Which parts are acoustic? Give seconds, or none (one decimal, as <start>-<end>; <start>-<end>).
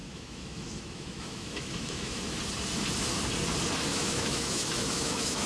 2.4-3.9